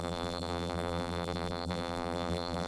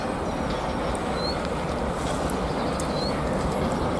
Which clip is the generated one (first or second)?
first